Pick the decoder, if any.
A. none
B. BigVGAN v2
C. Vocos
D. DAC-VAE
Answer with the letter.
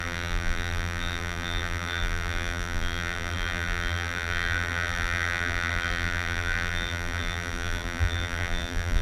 B